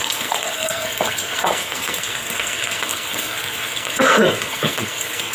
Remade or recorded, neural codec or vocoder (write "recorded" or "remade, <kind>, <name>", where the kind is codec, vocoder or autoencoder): remade, codec, SNAC